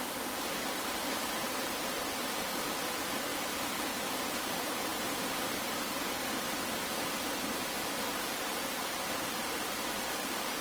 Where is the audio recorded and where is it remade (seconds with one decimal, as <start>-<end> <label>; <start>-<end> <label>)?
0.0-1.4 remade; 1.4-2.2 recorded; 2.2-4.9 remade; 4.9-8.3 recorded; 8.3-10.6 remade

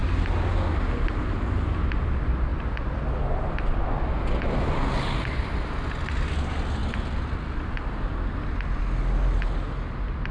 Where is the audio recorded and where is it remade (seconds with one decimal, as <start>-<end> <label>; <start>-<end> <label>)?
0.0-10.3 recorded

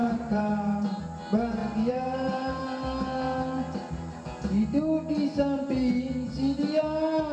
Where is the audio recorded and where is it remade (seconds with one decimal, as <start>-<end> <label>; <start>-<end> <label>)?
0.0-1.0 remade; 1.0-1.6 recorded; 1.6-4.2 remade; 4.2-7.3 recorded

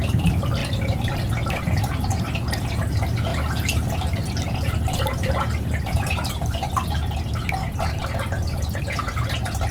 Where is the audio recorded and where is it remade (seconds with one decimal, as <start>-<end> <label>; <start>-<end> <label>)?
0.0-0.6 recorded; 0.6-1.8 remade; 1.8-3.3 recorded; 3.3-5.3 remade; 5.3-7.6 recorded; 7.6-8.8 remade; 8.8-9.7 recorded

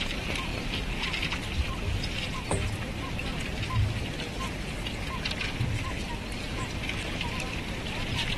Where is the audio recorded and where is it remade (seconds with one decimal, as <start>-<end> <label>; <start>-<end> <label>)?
0.0-6.5 remade; 6.5-7.2 recorded; 7.2-8.4 remade

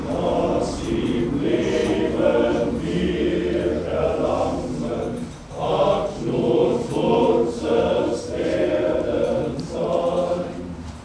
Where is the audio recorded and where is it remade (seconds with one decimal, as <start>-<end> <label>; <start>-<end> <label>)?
0.0-11.0 remade